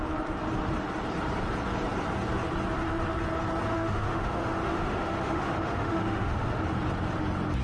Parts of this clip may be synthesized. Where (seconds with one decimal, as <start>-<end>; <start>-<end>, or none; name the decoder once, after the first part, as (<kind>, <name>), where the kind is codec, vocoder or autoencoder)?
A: 3.7-6.6 (autoencoder, DAC-VAE)